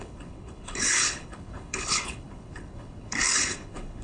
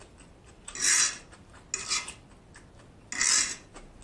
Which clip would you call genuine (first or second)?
second